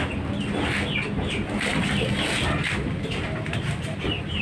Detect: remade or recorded recorded